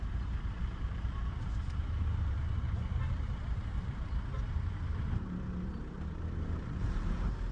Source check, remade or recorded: remade